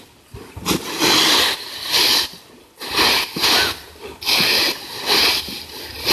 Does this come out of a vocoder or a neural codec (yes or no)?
no